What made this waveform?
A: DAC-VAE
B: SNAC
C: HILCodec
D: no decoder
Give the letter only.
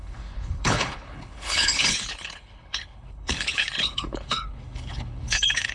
C